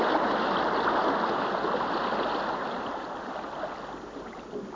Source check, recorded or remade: recorded